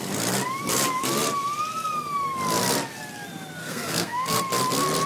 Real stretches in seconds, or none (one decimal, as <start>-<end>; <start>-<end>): 0.0-3.6; 4.4-5.1